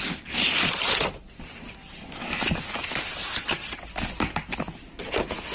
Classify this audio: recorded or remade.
recorded